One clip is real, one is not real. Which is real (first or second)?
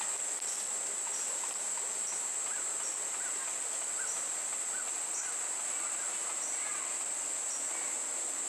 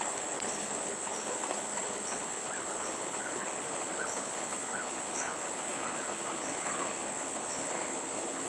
first